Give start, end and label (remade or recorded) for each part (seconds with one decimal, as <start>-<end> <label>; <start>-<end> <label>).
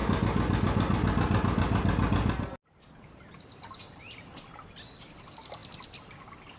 0.0-6.6 recorded